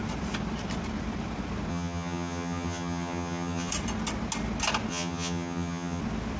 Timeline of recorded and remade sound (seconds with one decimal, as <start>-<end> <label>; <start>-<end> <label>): 0.0-1.7 recorded; 1.7-3.7 remade; 3.7-4.9 recorded; 4.9-6.0 remade; 6.0-6.4 recorded